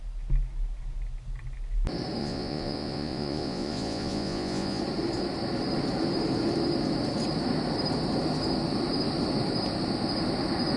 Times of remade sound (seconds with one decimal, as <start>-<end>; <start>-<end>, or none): 2.2-4.8